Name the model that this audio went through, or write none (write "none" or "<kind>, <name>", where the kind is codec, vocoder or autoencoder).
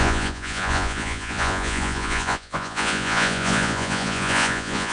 vocoder, Vocos